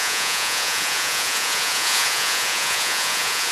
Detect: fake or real fake